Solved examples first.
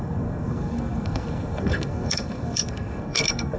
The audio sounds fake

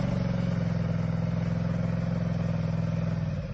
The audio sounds real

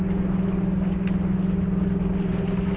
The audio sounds real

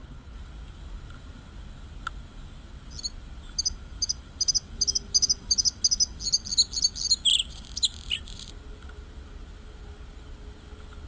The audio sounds real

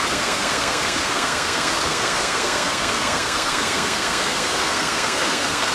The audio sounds fake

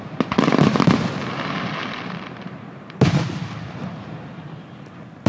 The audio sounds real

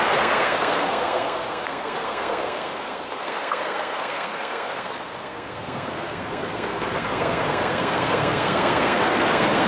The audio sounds fake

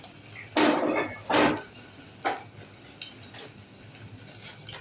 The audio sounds real